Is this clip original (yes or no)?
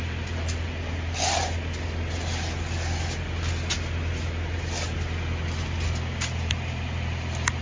yes